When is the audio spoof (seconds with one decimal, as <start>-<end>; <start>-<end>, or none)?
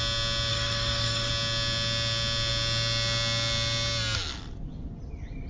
0.5-1.3